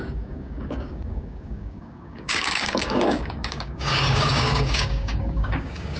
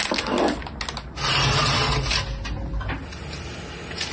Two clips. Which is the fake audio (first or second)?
first